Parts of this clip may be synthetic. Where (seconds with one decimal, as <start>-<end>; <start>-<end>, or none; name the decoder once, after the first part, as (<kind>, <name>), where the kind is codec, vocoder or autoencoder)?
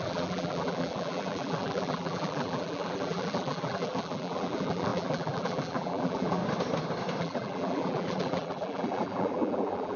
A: 0.0-6.4 (vocoder, BigVGAN v2); 7.2-10.0